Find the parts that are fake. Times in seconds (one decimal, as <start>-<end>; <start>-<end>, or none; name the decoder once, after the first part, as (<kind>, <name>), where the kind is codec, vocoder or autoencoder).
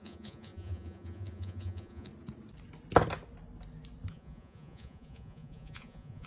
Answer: 0.0-2.1 (vocoder, Vocos); 4.1-6.3